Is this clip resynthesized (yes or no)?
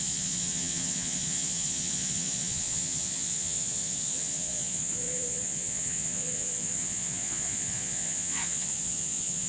yes